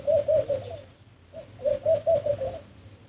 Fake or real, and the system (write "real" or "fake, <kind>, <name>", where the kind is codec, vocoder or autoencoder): real